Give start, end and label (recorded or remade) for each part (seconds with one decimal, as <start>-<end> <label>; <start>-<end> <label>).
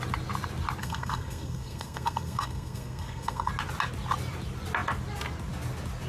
0.0-0.8 recorded; 0.8-3.5 remade; 3.5-6.1 recorded